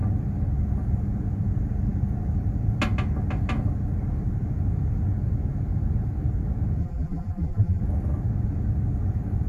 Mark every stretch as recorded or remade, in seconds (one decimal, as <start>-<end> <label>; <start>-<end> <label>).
0.0-6.8 recorded; 6.8-7.8 remade; 7.8-9.5 recorded